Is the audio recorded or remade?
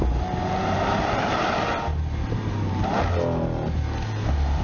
recorded